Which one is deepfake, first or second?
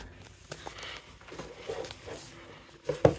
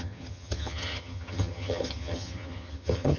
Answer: second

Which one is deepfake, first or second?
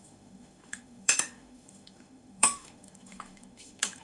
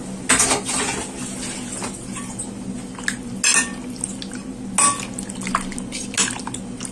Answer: first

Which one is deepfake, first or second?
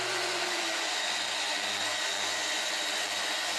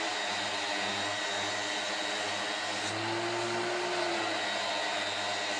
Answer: first